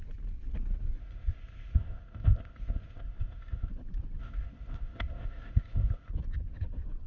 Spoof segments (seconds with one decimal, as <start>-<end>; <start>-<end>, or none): 1.0-3.7; 4.2-6.1